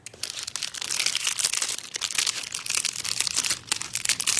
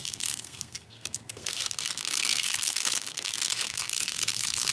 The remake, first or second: second